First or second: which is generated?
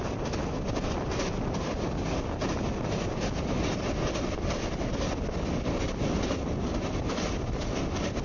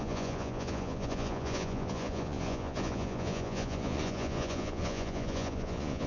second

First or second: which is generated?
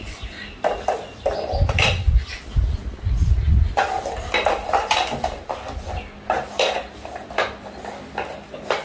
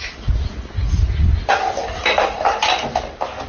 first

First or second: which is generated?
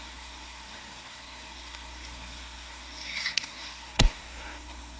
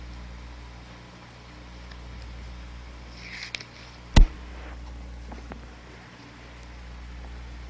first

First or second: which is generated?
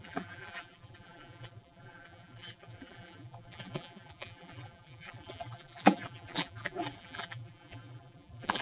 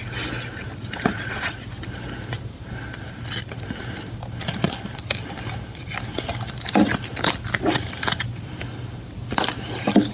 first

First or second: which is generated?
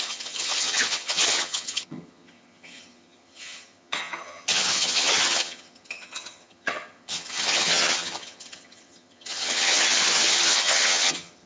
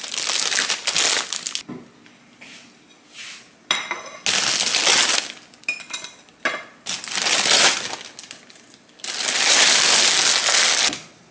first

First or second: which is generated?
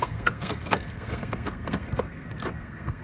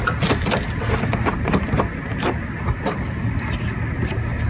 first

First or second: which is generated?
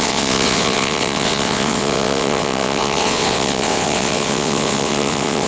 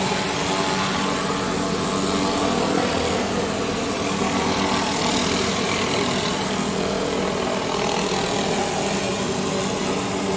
first